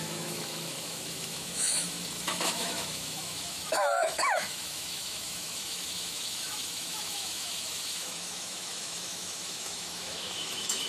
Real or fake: fake